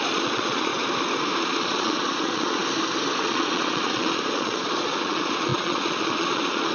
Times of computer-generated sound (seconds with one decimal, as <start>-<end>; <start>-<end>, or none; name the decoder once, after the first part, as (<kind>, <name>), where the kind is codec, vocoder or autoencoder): 0.0-0.7 (vocoder, Vocos); 1.4-2.6; 3.2-6.7